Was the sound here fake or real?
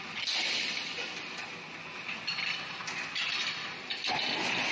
real